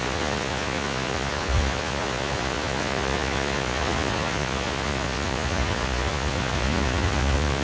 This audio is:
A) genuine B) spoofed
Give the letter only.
B